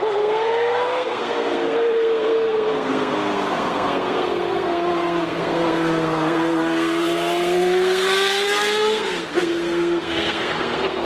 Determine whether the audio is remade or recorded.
remade